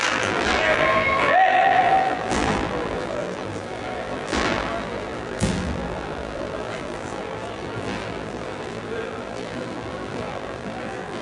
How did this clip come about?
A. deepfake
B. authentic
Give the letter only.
A